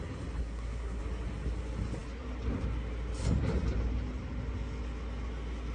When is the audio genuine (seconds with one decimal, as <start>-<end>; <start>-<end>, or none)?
0.0-0.4; 1.0-5.7